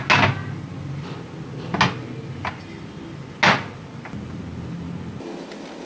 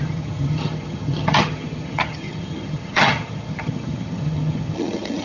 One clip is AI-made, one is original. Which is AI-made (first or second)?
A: second